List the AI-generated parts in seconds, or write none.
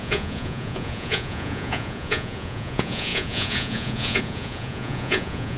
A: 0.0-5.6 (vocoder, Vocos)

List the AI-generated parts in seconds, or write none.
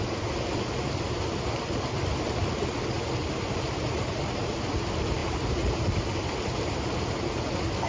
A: 5.2-6.4 (vocoder, BigVGAN v2)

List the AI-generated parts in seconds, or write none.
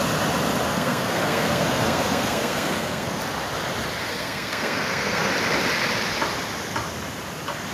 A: 0.7-3.2 (codec, SNAC); 4.0-5.3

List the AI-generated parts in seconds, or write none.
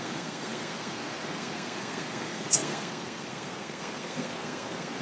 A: 0.0-5.0 (codec, SNAC)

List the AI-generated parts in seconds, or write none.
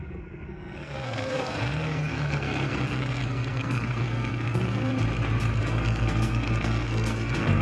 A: 0.0-4.9 (codec, SNAC); 5.6-7.6